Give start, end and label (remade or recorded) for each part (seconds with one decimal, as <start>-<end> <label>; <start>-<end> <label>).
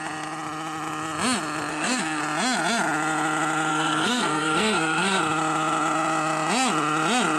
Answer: 0.0-1.7 recorded; 1.7-2.2 remade; 2.2-3.7 recorded; 3.7-5.2 remade; 5.2-7.4 recorded